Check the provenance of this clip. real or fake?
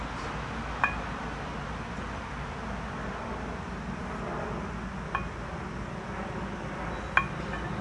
real